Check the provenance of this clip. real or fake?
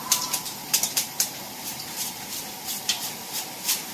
fake